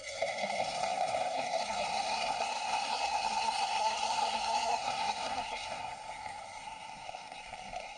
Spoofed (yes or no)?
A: yes